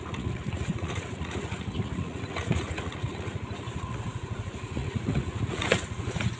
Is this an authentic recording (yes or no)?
no